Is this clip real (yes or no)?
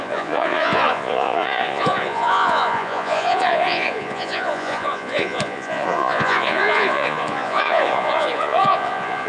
no